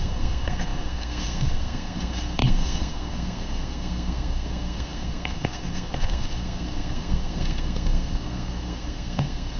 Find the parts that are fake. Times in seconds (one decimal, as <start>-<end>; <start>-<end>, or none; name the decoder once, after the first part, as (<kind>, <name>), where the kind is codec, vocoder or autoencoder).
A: 0.0-9.6 (codec, SNAC)